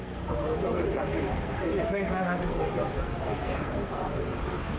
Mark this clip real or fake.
fake